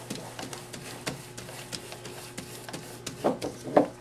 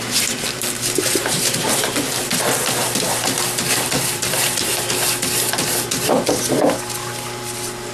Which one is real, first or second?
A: first